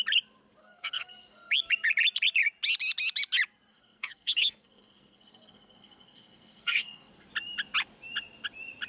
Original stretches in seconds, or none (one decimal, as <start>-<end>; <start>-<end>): 0.0-0.6; 1.5-3.7; 7.1-8.9